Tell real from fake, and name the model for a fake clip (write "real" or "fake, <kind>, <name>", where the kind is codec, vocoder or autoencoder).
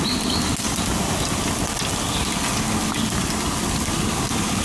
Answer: real